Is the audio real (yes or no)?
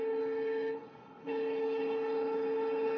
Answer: no